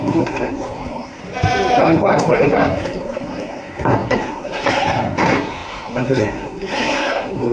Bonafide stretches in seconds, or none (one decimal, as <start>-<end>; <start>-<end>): 1.2-1.8

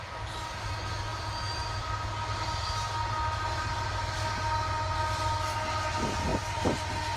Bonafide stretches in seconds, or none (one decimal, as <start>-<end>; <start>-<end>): 0.0-7.2